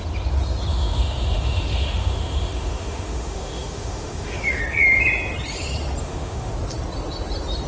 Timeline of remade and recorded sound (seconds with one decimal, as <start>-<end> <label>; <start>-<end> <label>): 0.0-0.7 recorded; 0.7-4.6 remade; 4.6-6.0 recorded; 6.0-6.5 remade; 6.5-7.7 recorded